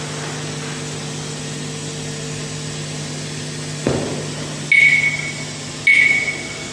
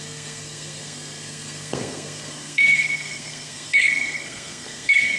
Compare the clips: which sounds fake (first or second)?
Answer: second